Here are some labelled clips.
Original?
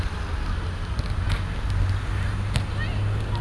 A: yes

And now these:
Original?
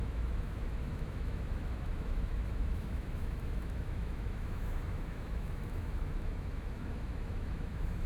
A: no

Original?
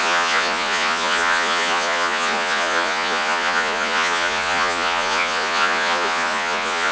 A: no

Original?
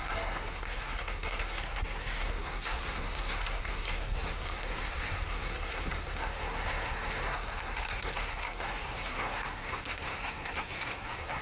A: no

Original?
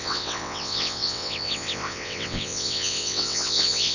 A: no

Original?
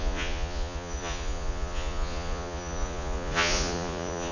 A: no